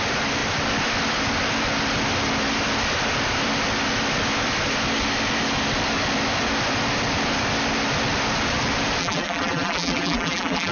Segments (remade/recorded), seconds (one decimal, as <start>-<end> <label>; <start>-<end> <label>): 0.0-9.0 recorded; 9.0-10.7 remade